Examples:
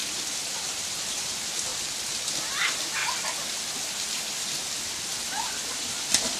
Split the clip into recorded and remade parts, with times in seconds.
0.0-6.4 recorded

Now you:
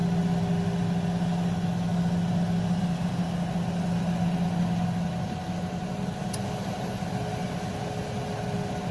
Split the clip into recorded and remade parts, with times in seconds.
0.0-8.9 recorded

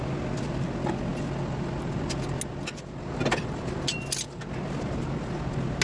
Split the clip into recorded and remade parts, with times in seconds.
0.0-5.8 recorded

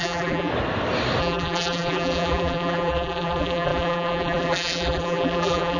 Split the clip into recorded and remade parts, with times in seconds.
0.0-0.5 remade; 0.5-1.2 recorded; 1.2-5.8 remade

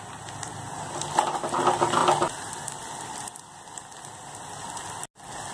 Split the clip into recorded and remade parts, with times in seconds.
0.0-2.0 recorded; 2.0-3.7 remade; 3.7-5.5 recorded

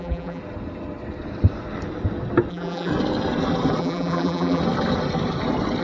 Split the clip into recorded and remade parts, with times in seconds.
0.0-0.4 remade; 0.4-2.5 recorded; 2.5-2.9 remade; 2.9-3.8 recorded; 3.8-4.6 remade; 4.6-5.8 recorded

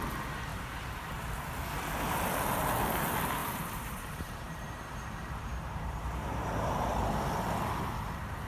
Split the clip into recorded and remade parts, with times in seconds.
0.0-0.5 recorded; 0.5-1.0 remade; 1.0-3.4 recorded; 3.4-4.5 remade; 4.5-5.5 recorded; 5.5-7.1 remade; 7.1-8.5 recorded